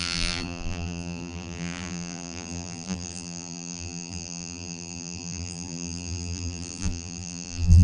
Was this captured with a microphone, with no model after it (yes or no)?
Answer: no